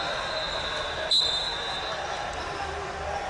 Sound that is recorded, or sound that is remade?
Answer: recorded